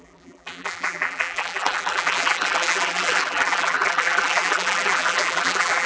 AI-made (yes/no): yes